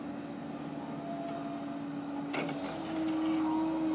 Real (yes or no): yes